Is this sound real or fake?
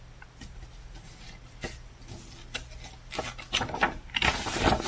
real